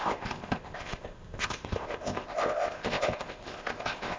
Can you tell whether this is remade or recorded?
remade